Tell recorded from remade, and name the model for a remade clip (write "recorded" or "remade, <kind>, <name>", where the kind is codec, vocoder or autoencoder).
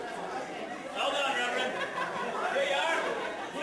recorded